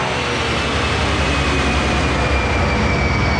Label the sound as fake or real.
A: real